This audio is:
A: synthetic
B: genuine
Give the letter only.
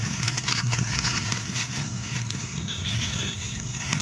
A